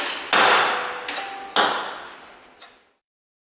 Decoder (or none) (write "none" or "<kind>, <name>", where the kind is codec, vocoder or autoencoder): none